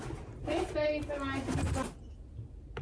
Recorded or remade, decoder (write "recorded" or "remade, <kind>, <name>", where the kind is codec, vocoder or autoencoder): recorded